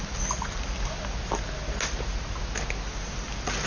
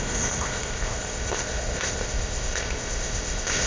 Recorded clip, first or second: first